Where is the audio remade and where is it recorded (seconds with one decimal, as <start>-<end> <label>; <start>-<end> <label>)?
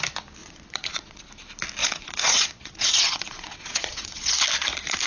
0.0-0.4 recorded; 0.4-1.2 remade; 1.2-1.8 recorded; 1.8-4.3 remade; 4.3-5.1 recorded